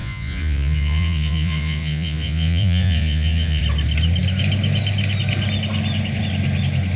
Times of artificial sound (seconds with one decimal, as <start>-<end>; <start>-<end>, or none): 0.0-3.6

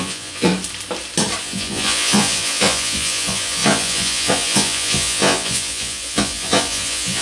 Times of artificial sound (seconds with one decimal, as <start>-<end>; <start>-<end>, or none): 0.0-0.5; 1.4-7.2